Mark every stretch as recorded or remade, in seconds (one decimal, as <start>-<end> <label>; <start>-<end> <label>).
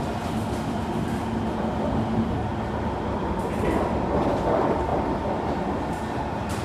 0.0-2.5 remade; 2.5-3.1 recorded; 3.1-4.9 remade; 4.9-6.6 recorded